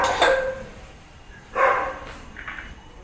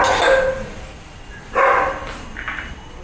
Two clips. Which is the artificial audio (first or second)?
first